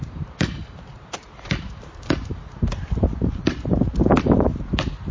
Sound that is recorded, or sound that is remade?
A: remade